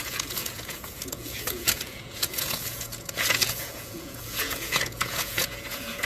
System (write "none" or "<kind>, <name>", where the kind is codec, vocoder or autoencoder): vocoder, Vocos